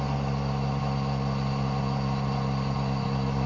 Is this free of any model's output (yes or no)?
yes